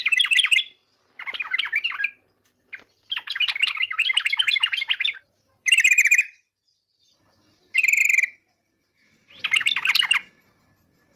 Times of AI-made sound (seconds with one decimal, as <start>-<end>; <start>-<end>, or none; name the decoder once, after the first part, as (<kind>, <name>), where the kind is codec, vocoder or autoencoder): 0.0-9.2 (vocoder, BigVGAN v2); 9.9-11.2